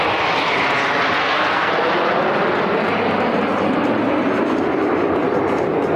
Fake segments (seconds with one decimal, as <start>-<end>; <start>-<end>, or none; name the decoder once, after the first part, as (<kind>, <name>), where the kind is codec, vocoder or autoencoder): 1.2-1.7 (codec, SNAC)